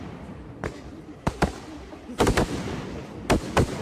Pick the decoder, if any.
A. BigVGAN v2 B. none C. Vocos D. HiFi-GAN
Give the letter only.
A